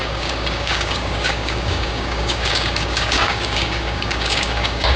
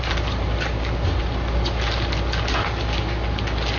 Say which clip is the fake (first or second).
first